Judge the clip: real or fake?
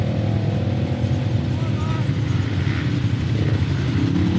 real